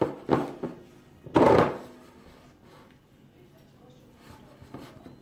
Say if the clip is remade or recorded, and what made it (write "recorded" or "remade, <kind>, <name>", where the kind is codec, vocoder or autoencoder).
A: recorded